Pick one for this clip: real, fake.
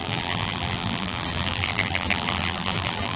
fake